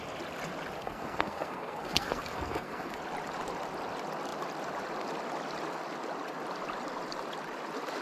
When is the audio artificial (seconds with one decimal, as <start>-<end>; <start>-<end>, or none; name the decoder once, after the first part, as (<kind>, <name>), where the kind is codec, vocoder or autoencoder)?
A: 0.8-3.0 (codec, SNAC)